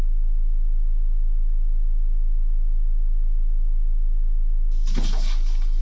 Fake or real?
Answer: real